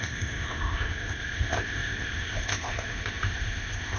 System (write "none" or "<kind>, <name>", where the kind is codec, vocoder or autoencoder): codec, ZipCodec